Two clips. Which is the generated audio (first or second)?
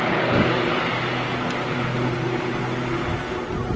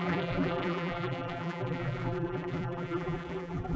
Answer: second